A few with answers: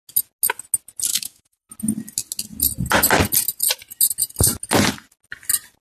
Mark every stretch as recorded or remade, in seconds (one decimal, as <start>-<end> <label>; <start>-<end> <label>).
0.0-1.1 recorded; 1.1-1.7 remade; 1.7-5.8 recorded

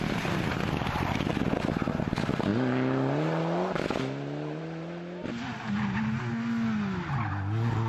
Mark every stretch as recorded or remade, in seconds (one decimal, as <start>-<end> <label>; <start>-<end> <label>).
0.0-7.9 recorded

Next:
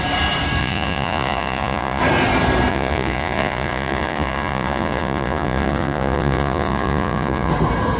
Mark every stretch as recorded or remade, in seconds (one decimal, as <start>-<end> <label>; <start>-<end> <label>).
0.0-0.6 recorded; 0.6-2.0 remade; 2.0-2.7 recorded; 2.7-7.5 remade; 7.5-8.0 recorded

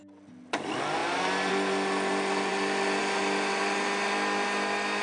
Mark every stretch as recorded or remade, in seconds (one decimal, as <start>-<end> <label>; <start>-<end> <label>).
0.0-5.0 recorded

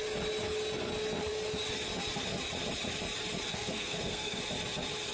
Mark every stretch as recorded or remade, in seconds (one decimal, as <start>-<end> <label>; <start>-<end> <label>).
0.0-3.5 recorded; 3.5-4.4 remade; 4.4-5.1 recorded

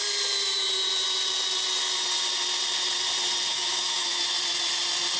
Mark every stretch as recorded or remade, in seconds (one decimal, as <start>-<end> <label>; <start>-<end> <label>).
0.0-3.5 recorded; 3.5-4.2 remade; 4.2-5.2 recorded

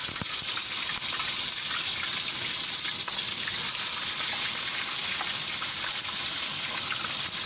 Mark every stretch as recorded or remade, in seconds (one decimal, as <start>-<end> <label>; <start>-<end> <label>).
0.0-7.5 recorded

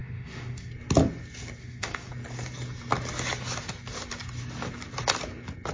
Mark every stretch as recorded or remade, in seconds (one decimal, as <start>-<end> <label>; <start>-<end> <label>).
0.0-0.7 remade; 0.7-1.6 recorded; 1.6-2.1 remade; 2.1-5.7 recorded